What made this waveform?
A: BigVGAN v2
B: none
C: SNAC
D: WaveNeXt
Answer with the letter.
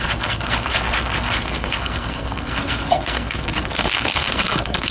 C